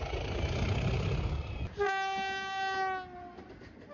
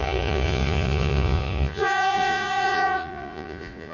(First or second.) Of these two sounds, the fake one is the second